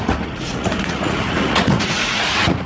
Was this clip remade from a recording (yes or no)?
yes